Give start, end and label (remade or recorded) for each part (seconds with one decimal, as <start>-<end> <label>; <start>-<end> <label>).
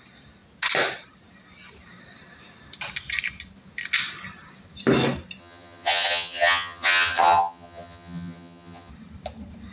0.0-5.4 recorded; 5.4-8.9 remade; 8.9-9.7 recorded